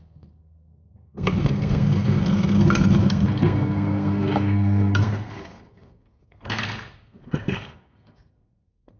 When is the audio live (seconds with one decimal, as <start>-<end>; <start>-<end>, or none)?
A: none